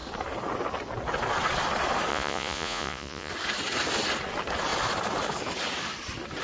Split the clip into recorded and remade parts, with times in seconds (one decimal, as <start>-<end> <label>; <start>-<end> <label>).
0.0-2.1 recorded; 2.1-3.3 remade; 3.3-6.4 recorded